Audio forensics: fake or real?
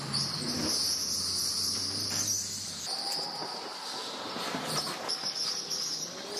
real